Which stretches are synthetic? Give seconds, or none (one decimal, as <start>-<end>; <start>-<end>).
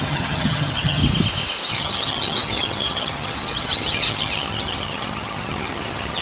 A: 0.0-1.0; 1.7-6.2